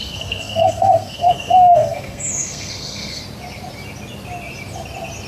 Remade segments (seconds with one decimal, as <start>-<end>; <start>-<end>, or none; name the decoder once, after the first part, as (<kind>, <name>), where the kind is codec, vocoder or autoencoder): 0.0-3.2 (codec, SNAC)